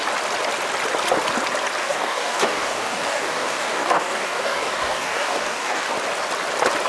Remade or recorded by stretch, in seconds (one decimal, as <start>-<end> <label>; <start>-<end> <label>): 0.0-1.8 recorded; 1.8-5.9 remade; 5.9-6.9 recorded